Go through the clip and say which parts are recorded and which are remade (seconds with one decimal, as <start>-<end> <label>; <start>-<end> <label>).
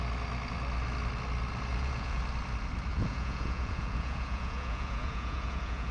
0.0-1.7 recorded; 1.7-2.2 remade; 2.2-2.9 recorded; 2.9-5.9 remade